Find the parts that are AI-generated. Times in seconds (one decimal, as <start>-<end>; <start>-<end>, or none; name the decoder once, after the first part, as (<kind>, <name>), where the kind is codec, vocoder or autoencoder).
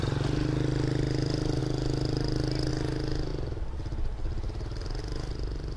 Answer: none